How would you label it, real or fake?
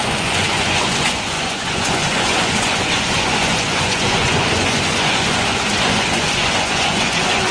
fake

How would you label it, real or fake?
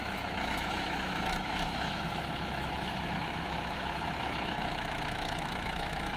fake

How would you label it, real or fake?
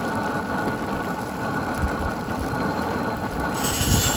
real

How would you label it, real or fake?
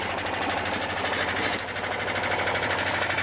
real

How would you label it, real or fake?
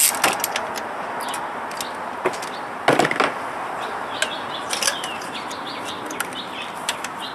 real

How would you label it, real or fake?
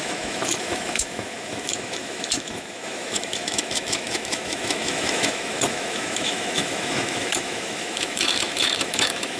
fake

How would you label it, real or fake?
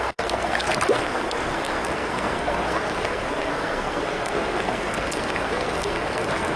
fake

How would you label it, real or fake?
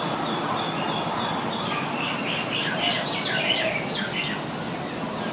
real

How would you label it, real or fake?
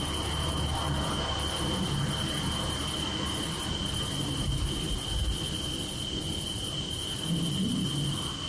real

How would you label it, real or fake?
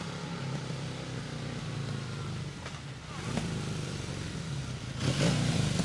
fake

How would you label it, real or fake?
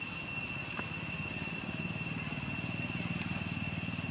real